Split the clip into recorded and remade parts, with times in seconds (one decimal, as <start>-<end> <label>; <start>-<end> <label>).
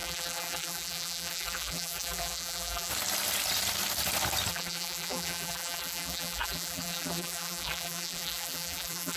0.0-2.9 remade; 2.9-4.5 recorded; 4.5-9.2 remade